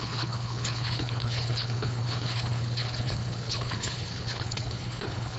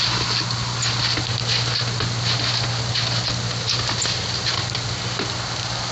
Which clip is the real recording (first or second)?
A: second